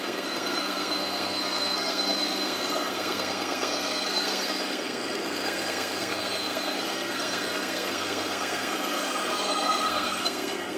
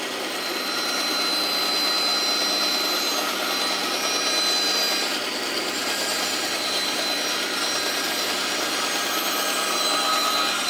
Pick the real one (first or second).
second